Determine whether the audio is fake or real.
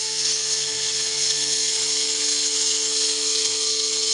fake